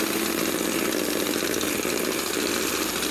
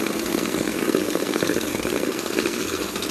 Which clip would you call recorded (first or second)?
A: first